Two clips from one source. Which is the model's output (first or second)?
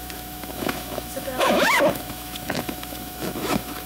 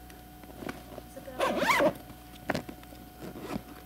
first